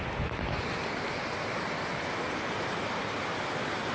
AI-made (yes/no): no